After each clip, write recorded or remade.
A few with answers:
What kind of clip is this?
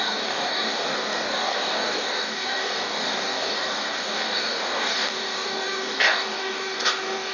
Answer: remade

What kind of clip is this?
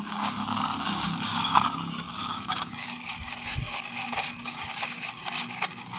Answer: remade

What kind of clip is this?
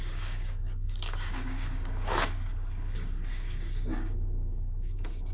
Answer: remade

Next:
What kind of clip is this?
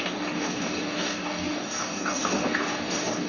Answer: remade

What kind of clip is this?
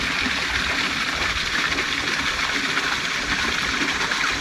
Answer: recorded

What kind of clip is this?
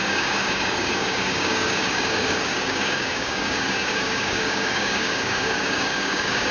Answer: remade